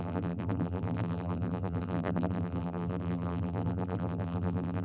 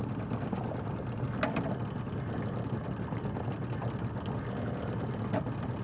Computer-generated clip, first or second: first